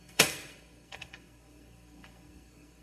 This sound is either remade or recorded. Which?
remade